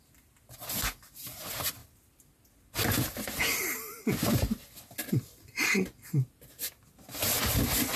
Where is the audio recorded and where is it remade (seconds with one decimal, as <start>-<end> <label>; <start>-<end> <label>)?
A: 0.0-8.0 recorded